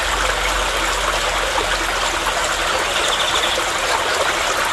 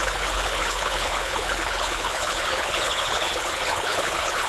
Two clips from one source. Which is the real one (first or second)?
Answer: first